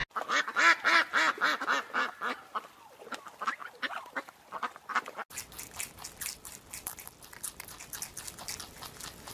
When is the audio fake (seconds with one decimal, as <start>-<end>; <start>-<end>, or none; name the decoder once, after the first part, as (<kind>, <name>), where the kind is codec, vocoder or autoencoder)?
none